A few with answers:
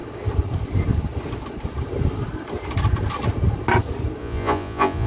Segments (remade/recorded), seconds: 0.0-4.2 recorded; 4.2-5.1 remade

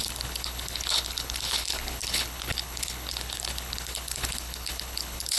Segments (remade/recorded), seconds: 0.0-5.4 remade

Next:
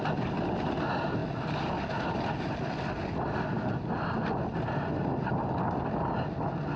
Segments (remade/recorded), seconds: 0.0-6.8 recorded

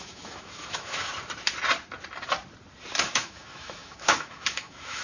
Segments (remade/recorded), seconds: 0.0-1.1 remade; 1.1-3.0 recorded; 3.0-5.0 remade

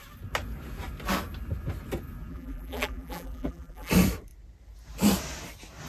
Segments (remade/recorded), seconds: 0.0-2.3 recorded; 2.3-3.9 remade; 3.9-5.9 recorded

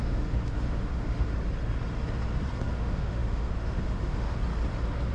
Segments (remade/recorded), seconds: 0.0-1.3 remade; 1.3-2.7 recorded; 2.7-4.4 remade; 4.4-5.1 recorded

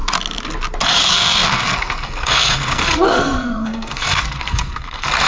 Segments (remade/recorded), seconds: 0.0-0.9 recorded; 0.9-5.3 remade

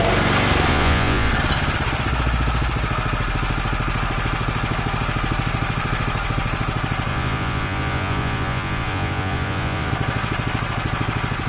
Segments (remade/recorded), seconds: 0.0-0.7 recorded; 0.7-1.3 remade; 1.3-7.1 recorded; 7.1-9.9 remade; 9.9-11.5 recorded